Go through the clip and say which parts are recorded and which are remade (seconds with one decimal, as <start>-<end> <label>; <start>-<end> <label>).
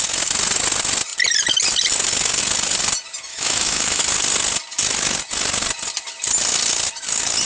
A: 0.0-3.3 recorded; 3.3-4.0 remade; 4.0-7.4 recorded